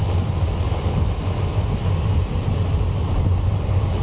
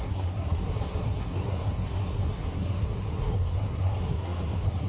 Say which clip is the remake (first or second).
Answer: second